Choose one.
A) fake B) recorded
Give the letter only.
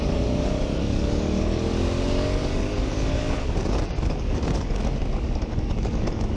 A